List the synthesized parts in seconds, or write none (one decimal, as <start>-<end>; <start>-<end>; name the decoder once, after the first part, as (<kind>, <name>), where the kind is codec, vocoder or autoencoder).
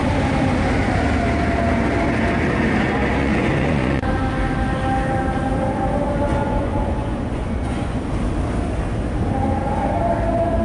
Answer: 3.2-4.1 (vocoder, Vocos); 6.3-8.0